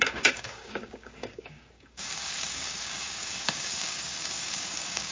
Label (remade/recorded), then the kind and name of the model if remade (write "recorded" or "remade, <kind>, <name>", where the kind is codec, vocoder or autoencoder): remade, codec, DAC